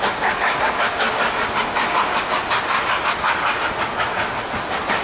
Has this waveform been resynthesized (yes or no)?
no